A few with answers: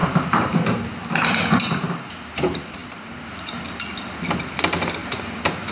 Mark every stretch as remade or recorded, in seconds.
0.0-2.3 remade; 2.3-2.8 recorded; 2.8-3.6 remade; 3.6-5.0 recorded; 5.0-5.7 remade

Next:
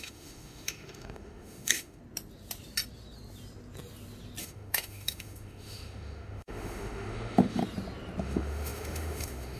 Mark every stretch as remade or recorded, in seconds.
0.0-2.0 remade; 2.0-4.4 recorded; 4.4-7.6 remade; 7.6-8.2 recorded; 8.2-9.6 remade

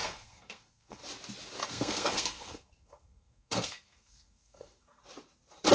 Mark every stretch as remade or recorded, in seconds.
0.0-1.0 remade; 1.0-1.6 recorded; 1.6-5.0 remade; 5.0-5.7 recorded

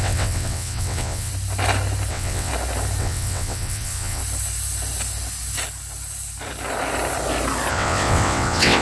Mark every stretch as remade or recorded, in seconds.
0.0-1.3 remade; 1.3-2.1 recorded; 2.1-2.5 remade; 2.5-3.0 recorded; 3.0-4.2 remade; 4.2-7.7 recorded; 7.7-8.8 remade

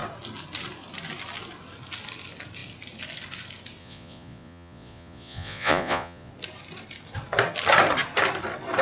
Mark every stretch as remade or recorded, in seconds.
0.0-3.8 recorded; 3.8-6.3 remade; 6.3-8.8 recorded

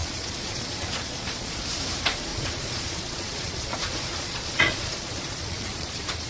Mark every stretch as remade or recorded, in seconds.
0.0-1.6 remade; 1.6-2.3 recorded; 2.3-6.3 remade

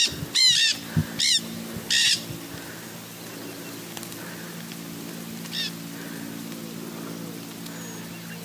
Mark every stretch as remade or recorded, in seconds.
0.0-8.4 recorded